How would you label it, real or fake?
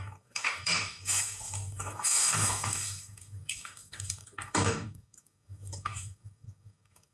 fake